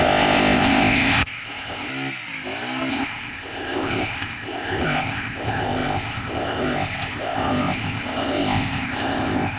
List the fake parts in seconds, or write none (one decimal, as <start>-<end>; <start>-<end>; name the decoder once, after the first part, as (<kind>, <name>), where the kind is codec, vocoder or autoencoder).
0.0-1.9 (codec, ZipCodec); 2.9-9.6